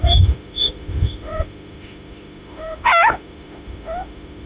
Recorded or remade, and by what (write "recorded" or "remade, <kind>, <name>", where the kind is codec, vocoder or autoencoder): remade, autoencoder, DAC-VAE